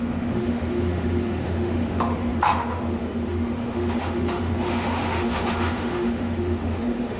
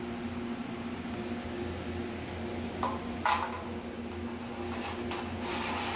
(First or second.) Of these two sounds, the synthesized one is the first